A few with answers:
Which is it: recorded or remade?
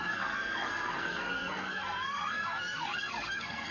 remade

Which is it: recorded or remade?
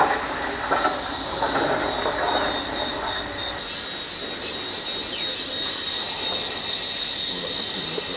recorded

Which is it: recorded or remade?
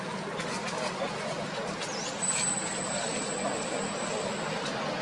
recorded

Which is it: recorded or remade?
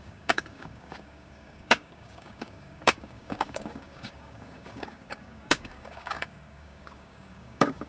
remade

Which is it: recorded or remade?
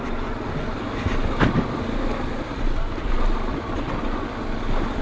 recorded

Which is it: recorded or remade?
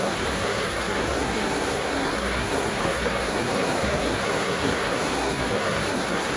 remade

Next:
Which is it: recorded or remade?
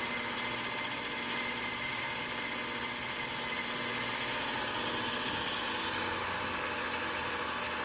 recorded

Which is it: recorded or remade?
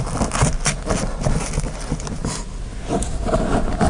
recorded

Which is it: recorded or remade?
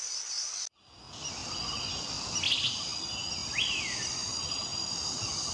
recorded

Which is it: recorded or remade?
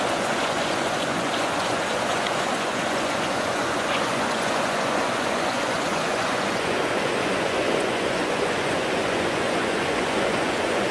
remade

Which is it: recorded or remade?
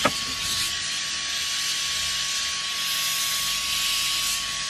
recorded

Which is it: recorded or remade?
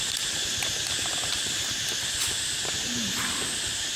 recorded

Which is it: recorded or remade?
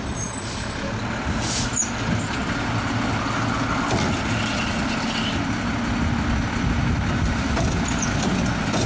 recorded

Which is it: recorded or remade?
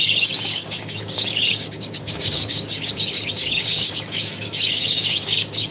remade